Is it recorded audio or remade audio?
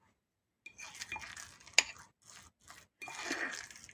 recorded